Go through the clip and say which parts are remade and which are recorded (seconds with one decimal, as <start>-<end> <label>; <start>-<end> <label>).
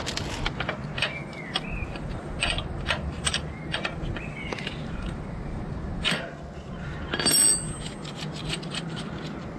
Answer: 0.0-1.2 recorded; 1.2-6.2 remade; 6.2-8.4 recorded; 8.4-9.1 remade; 9.1-9.6 recorded